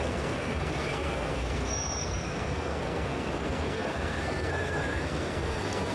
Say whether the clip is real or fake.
fake